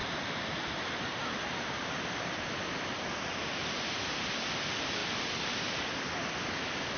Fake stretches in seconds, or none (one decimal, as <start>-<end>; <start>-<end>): 0.0-4.2